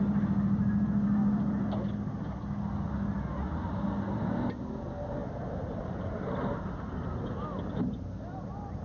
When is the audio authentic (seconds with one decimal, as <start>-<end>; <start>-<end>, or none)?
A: 0.0-8.8